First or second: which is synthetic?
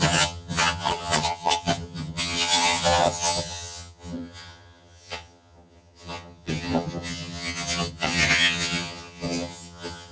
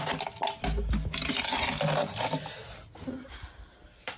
first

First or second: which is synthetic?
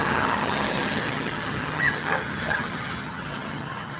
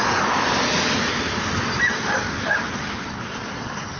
first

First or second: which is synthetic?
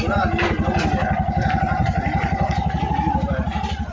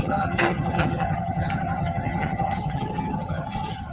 second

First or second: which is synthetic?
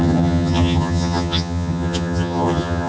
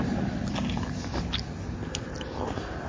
first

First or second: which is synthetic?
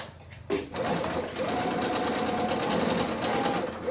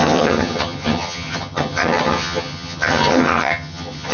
second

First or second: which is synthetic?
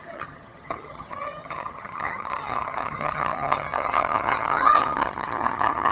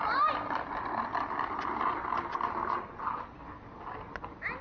first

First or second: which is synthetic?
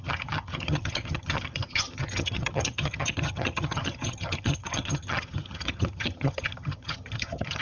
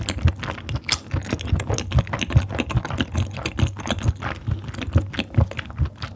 first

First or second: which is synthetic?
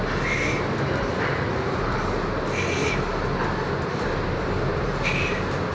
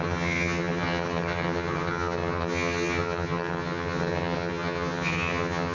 second